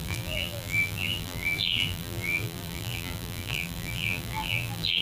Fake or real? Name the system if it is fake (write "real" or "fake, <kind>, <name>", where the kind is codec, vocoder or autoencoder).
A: fake, vocoder, BigVGAN v2